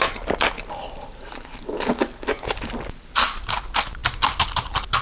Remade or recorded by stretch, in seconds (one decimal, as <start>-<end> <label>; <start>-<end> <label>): 0.0-5.0 recorded